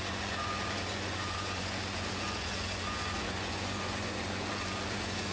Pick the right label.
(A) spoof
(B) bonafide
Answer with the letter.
A